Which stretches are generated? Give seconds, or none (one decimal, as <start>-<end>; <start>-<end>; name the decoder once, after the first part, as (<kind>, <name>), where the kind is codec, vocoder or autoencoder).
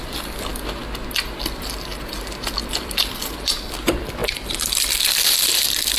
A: 0.0-0.5 (vocoder, BigVGAN v2); 1.4-1.9; 2.8-6.0